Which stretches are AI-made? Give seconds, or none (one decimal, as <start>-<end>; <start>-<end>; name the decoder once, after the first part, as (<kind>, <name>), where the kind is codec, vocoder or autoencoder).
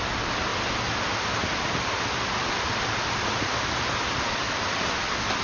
none